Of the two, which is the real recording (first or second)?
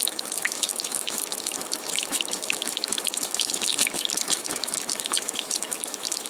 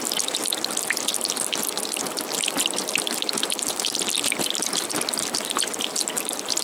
second